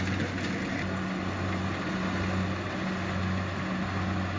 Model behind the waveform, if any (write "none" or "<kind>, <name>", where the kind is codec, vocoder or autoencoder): none